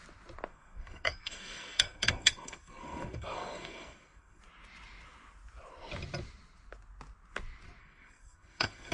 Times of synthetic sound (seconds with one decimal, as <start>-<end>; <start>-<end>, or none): 0.5-4.4; 7.8-8.9